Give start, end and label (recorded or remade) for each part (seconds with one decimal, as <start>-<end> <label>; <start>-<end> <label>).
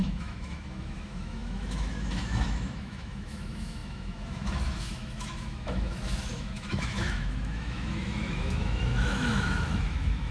0.0-10.3 remade